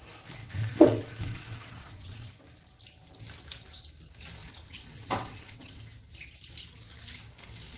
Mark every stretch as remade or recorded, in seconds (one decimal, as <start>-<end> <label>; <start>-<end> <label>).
0.0-0.4 recorded; 0.4-2.4 remade; 2.4-4.4 recorded; 4.4-5.8 remade; 5.8-7.8 recorded